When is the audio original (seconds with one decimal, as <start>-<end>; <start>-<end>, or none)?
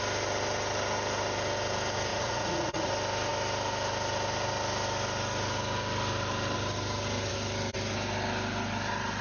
0.0-2.1; 2.9-9.2